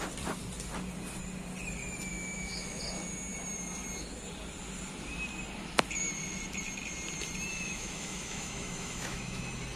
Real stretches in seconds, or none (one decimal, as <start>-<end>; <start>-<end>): 0.0-2.1; 2.8-7.5; 9.4-9.8